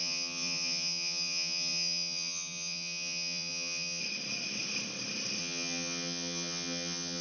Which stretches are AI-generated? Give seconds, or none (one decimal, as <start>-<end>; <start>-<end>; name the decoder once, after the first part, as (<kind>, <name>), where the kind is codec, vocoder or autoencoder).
0.0-4.0 (vocoder, HiFi-GAN); 5.4-7.2